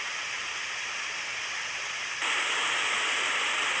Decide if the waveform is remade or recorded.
recorded